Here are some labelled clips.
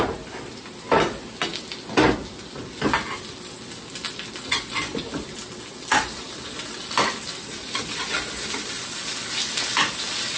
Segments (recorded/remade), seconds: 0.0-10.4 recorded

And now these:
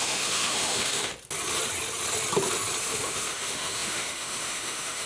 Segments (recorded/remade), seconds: 0.0-1.1 remade; 1.1-2.8 recorded; 2.8-5.1 remade

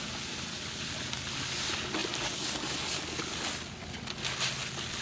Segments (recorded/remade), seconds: 0.0-5.0 recorded

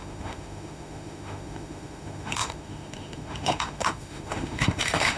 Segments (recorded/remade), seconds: 0.0-5.2 remade

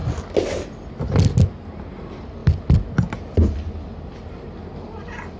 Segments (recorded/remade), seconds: 0.0-5.4 recorded

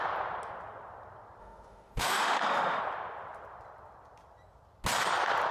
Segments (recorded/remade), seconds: 0.0-1.4 recorded; 1.4-2.8 remade; 2.8-5.5 recorded

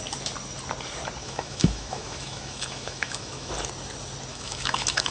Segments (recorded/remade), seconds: 0.0-1.2 recorded; 1.2-3.5 remade; 3.5-4.3 recorded; 4.3-5.1 remade